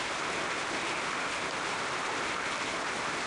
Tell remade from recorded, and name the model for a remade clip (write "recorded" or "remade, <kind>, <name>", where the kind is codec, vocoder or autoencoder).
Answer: recorded